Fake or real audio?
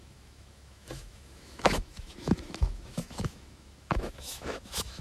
fake